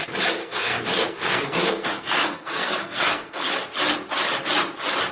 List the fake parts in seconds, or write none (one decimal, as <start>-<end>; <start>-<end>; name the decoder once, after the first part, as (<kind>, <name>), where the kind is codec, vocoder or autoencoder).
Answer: 0.4-3.5 (codec, SNAC)